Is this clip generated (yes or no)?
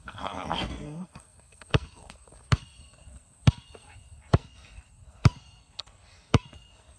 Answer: yes